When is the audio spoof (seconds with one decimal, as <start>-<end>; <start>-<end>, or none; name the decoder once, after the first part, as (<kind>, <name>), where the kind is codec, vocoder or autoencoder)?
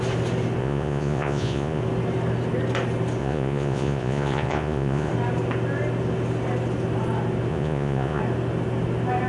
0.6-1.8 (vocoder, Vocos); 3.2-5.1; 7.5-8.2